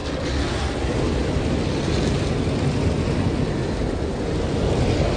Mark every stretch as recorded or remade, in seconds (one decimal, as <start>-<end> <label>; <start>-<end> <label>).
0.0-5.2 recorded